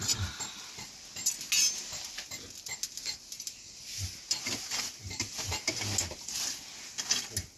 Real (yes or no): yes